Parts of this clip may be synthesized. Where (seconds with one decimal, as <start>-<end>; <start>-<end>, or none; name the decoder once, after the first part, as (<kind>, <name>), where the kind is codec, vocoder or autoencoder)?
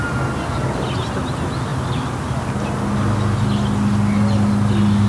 none